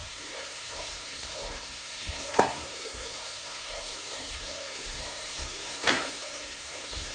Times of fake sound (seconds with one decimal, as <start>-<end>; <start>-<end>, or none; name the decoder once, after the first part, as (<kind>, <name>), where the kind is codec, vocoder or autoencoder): 0.0-7.1 (codec, SNAC)